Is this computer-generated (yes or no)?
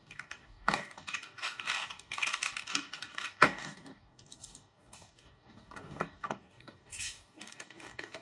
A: yes